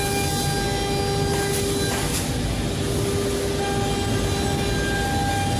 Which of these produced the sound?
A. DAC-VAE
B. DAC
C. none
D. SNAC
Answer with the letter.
C